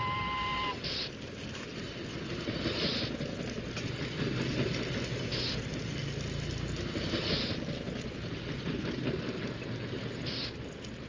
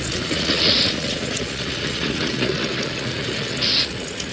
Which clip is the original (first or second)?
first